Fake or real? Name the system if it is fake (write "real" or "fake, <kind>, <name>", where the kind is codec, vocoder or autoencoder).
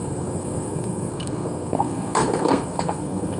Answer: fake, codec, SNAC